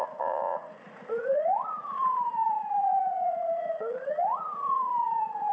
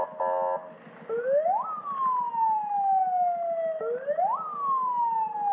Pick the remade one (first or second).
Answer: first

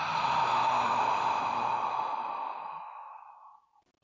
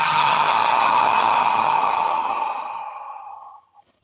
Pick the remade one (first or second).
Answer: second